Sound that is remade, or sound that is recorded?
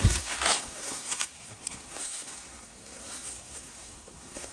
remade